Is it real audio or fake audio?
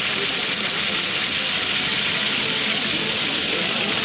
real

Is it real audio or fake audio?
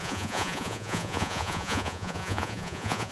fake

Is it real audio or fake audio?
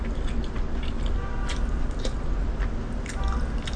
real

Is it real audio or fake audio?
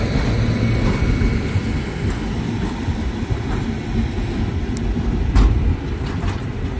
real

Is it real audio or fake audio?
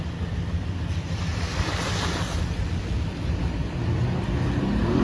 real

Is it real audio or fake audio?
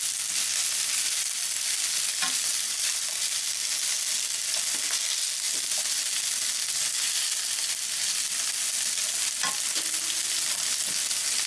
real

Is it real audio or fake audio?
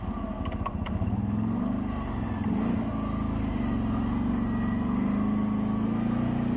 real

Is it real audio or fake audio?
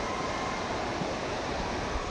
real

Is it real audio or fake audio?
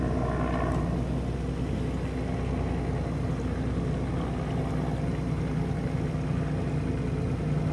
real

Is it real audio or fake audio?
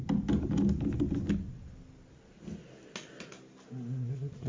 real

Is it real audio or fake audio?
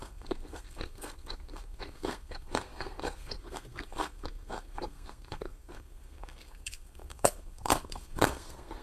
fake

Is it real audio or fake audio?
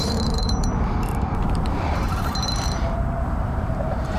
fake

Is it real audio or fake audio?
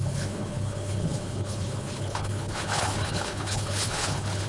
fake